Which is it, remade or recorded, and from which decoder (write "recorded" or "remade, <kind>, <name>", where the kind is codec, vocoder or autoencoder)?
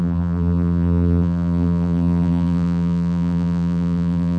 remade, vocoder, BigVGAN v2